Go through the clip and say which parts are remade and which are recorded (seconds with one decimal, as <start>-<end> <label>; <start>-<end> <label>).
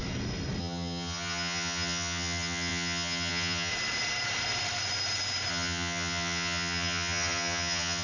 0.0-0.6 recorded; 0.6-3.7 remade; 3.7-5.5 recorded; 5.5-8.0 remade